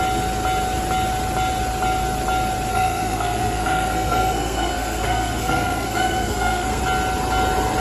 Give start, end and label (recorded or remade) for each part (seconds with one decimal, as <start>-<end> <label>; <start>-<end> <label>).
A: 0.0-2.7 recorded; 2.7-6.8 remade; 6.8-7.8 recorded

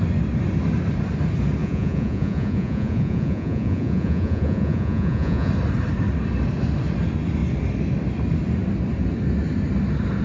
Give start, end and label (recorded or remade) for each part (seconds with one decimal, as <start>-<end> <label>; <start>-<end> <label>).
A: 0.0-1.6 recorded; 1.6-5.5 remade; 5.5-10.2 recorded

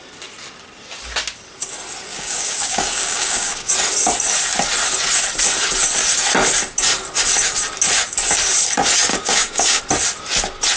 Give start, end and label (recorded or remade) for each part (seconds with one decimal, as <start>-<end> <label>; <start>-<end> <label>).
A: 0.0-2.1 recorded; 2.1-3.7 remade; 3.7-9.1 recorded; 9.1-9.8 remade; 9.8-10.8 recorded

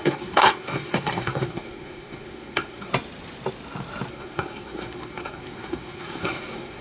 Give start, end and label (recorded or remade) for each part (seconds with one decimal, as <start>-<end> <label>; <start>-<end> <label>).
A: 0.0-2.9 remade; 2.9-4.1 recorded; 4.1-6.8 remade

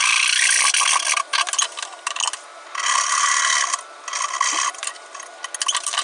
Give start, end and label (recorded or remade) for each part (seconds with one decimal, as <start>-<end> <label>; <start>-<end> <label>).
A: 0.0-6.0 recorded